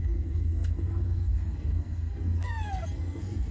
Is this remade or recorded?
remade